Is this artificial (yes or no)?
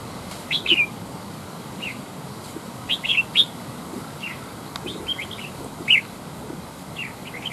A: yes